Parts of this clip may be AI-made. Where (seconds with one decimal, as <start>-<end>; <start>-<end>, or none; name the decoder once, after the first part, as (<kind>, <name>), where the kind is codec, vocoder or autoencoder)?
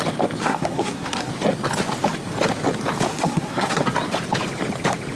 0.4-1.3 (codec, SNAC); 3.1-3.8